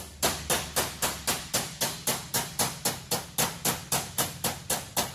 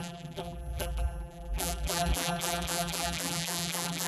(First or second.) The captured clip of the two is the first